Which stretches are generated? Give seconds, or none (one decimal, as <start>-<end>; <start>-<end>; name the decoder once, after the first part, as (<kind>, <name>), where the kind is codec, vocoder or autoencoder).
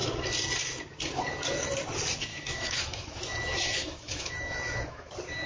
2.3-5.1 (autoencoder, DAC-VAE)